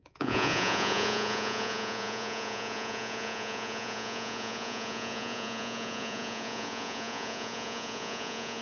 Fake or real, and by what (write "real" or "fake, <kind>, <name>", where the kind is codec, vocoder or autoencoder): fake, vocoder, Vocos